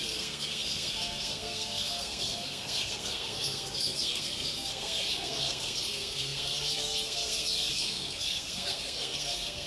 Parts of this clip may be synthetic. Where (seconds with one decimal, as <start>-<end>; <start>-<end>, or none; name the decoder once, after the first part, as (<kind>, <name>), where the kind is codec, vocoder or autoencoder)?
0.0-9.7 (codec, SNAC)